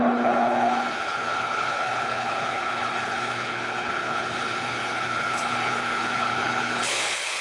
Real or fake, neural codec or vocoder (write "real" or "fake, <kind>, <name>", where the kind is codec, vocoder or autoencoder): fake, codec, HILCodec